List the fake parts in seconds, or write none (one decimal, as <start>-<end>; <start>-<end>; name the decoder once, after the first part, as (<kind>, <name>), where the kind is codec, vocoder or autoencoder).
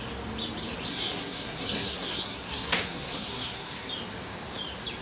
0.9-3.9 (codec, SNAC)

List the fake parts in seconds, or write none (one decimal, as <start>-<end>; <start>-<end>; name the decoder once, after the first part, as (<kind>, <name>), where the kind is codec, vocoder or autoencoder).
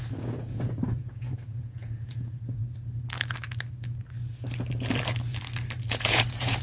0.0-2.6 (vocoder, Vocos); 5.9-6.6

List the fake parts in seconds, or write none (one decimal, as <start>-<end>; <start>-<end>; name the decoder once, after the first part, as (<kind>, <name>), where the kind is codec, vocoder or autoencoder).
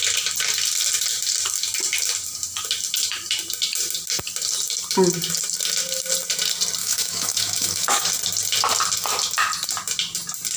6.8-8.1 (autoencoder, DAC-VAE)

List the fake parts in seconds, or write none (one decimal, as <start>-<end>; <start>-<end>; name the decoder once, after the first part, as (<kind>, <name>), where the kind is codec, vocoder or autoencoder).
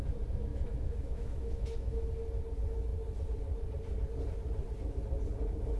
0.5-2.1 (autoencoder, DAC-VAE)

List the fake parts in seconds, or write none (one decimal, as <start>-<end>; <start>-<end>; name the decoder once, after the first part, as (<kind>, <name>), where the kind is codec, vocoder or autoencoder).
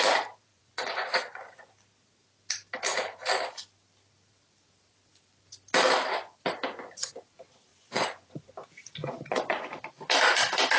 0.5-1.7 (vocoder, Vocos); 7.7-8.4; 9.0-9.8